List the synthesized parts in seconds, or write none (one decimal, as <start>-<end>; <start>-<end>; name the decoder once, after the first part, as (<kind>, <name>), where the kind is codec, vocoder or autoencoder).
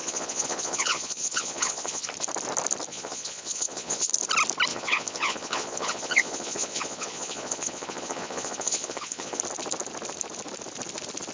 0.0-2.1 (vocoder, Vocos); 2.9-4.1; 4.7-9.4